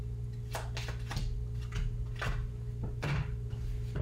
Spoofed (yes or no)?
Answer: no